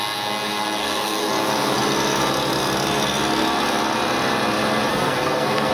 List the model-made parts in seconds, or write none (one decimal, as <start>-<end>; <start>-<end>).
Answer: 0.8-1.3; 4.9-5.7